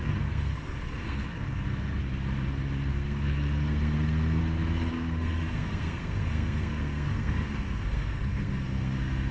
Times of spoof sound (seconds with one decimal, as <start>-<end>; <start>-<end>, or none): 0.0-2.0; 2.9-4.4; 4.9-9.3